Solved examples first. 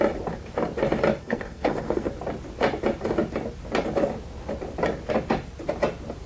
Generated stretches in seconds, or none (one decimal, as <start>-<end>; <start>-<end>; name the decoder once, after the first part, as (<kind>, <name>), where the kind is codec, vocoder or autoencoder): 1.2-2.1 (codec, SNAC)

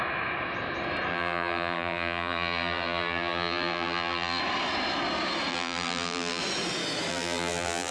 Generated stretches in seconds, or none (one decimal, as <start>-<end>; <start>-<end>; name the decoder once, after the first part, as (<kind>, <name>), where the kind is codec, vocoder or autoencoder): 1.1-4.4 (vocoder, BigVGAN v2); 5.5-6.4; 7.1-7.9

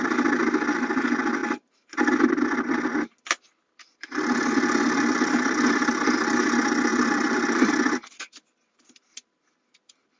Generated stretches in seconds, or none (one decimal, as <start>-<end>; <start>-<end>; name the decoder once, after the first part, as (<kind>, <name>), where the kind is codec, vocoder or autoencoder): 6.9-7.7 (vocoder, BigVGAN v2)

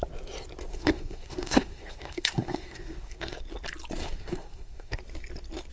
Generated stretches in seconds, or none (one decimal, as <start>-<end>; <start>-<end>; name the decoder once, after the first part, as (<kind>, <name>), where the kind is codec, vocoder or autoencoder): 0.7-3.4 (codec, SNAC); 4.0-5.0

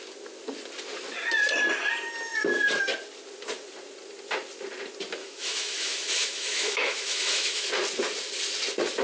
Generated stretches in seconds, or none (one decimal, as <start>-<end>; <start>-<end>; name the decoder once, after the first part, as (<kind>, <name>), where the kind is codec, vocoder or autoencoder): 5.2-7.7 (autoencoder, DAC-VAE)

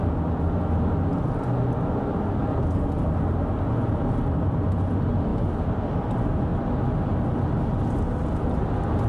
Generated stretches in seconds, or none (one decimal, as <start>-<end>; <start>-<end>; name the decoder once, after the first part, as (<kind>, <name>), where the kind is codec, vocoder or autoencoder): none

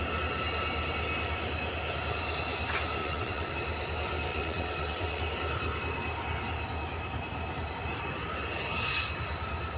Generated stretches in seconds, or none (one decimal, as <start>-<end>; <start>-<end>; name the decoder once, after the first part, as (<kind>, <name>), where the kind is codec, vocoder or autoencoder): 3.0-3.5 (vocoder, WaveNeXt); 4.3-5.2

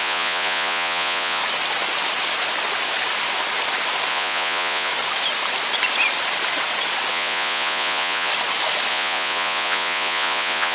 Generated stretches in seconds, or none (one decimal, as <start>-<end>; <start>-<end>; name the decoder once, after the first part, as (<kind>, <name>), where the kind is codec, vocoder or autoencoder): 0.0-1.4 (vocoder, Vocos); 4.1-4.9; 7.1-8.3; 8.9-10.7